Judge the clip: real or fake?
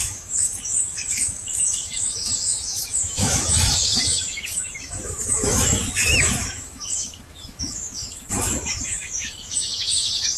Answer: fake